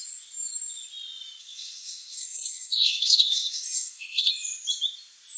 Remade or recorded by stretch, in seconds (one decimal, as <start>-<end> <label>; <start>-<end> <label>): 0.0-1.4 recorded; 1.4-4.3 remade; 4.3-5.4 recorded